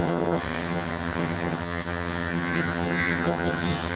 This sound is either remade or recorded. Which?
remade